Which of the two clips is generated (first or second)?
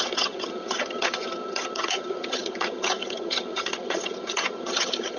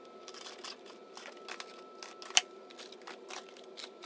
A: first